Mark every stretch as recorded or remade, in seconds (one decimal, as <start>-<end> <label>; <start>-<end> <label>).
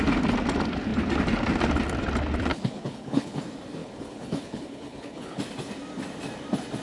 0.0-2.5 recorded; 2.5-3.4 remade; 3.4-3.8 recorded; 3.8-5.4 remade; 5.4-6.8 recorded